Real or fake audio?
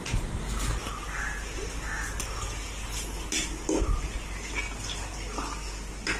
real